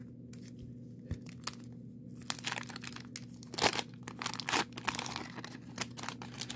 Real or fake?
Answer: real